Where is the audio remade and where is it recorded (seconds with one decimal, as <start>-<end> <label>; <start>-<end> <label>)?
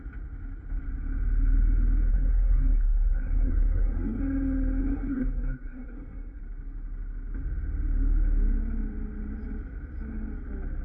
0.0-2.1 recorded; 2.1-4.2 remade; 4.2-4.8 recorded; 4.8-6.4 remade; 6.4-10.8 recorded